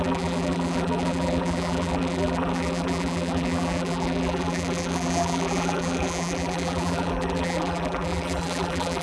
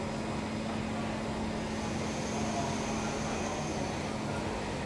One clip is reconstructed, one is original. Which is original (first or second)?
second